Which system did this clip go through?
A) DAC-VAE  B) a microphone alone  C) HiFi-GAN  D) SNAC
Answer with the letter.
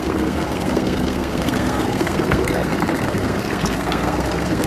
D